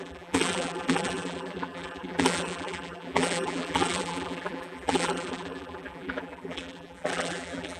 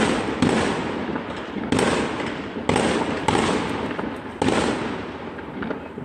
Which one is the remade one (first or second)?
first